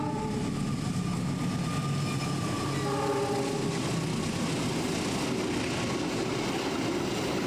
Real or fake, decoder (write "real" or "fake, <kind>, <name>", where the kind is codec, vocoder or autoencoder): real